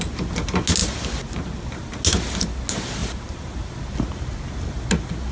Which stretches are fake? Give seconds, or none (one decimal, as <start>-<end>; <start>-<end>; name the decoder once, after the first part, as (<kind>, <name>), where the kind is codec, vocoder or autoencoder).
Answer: none